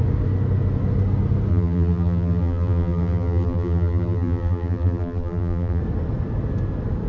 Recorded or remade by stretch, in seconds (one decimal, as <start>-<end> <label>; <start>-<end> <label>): 0.0-1.5 recorded; 1.5-5.8 remade; 5.8-7.1 recorded